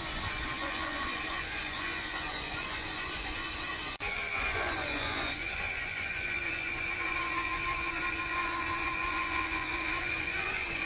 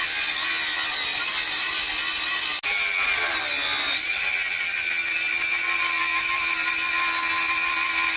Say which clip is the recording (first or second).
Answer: second